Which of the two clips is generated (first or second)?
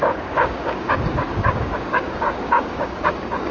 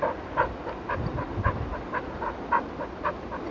first